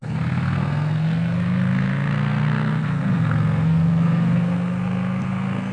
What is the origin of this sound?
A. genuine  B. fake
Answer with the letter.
B